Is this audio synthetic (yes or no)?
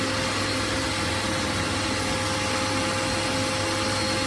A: no